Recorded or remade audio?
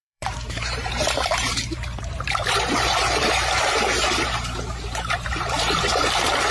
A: remade